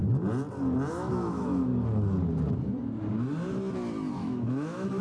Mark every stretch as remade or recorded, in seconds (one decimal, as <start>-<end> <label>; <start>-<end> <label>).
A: 0.0-0.9 recorded; 0.9-1.7 remade; 1.7-4.1 recorded; 4.1-5.0 remade